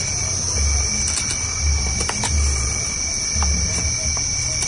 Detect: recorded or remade recorded